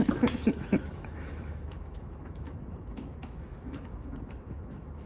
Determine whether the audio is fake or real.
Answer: fake